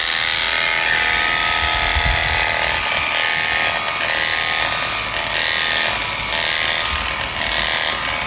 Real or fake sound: real